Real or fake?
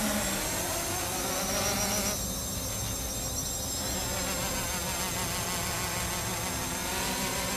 real